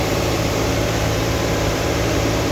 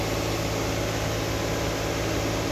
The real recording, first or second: second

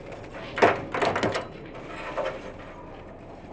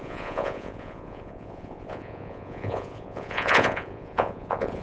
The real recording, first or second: first